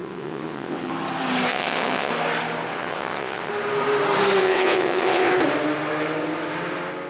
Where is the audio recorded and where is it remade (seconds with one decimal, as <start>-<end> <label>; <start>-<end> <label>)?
0.0-0.9 remade; 0.9-1.5 recorded; 1.5-2.1 remade; 2.1-2.7 recorded; 2.7-3.5 remade; 3.5-4.4 recorded; 4.4-5.3 remade; 5.3-7.1 recorded